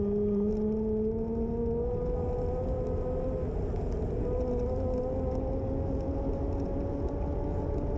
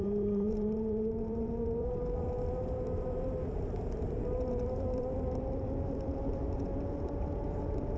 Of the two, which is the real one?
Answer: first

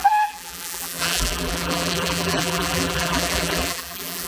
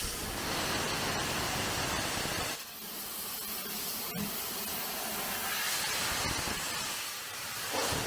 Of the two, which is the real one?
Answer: second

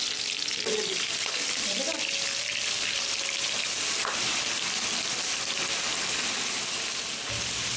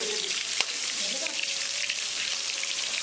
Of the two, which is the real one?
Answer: first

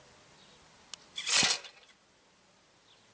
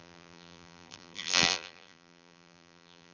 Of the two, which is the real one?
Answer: first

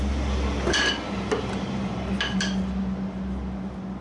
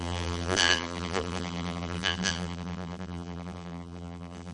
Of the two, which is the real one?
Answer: first